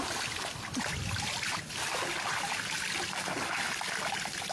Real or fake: real